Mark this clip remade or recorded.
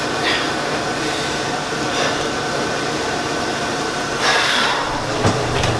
remade